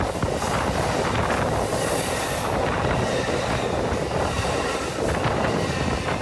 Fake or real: real